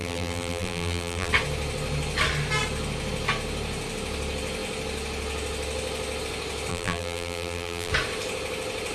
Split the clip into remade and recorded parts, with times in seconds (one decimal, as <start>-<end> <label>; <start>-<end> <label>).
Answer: 0.0-1.3 remade; 1.3-6.7 recorded; 6.7-7.9 remade; 7.9-8.9 recorded